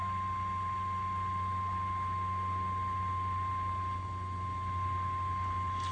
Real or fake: real